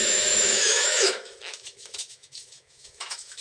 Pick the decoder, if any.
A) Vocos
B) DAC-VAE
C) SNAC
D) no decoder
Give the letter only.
B